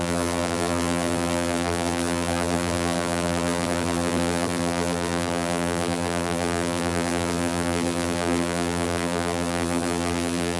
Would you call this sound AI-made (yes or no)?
yes